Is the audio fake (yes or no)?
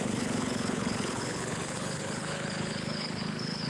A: yes